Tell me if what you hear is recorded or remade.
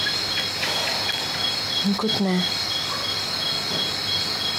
recorded